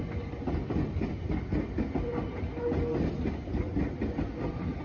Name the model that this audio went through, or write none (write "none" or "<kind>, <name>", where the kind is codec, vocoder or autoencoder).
none